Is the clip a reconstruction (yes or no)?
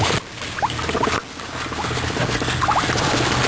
no